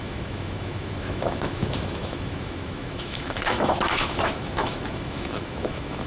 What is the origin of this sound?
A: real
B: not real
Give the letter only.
B